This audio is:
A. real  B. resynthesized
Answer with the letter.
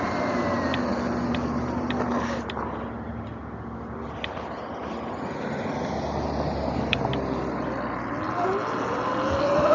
A